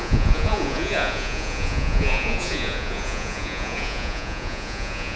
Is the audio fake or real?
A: fake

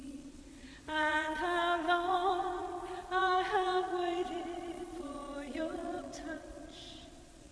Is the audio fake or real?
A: fake